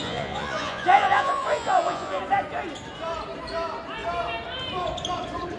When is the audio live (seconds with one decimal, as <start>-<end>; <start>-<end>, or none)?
2.2-5.6